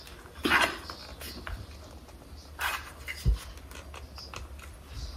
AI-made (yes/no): no